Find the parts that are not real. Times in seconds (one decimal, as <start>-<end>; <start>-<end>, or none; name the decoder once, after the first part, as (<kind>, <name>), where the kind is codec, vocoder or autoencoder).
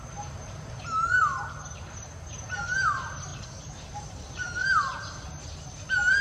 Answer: 0.0-1.3 (vocoder, BigVGAN v2); 2.2-4.6; 5.1-6.2